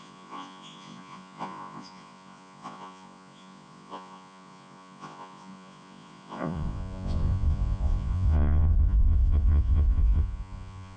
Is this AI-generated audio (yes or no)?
yes